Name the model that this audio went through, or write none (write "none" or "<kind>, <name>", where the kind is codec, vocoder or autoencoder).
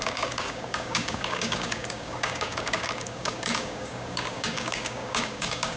codec, DAC